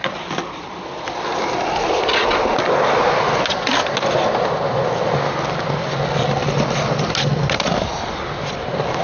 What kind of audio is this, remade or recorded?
recorded